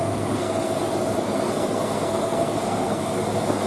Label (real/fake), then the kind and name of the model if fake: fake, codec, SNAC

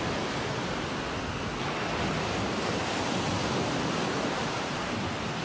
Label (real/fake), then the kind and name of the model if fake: real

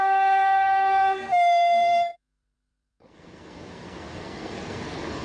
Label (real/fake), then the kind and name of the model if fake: fake, codec, SNAC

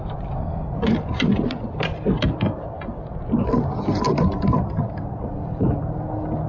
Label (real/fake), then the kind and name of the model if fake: real